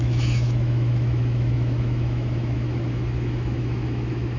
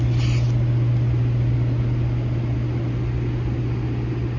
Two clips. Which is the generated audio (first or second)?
first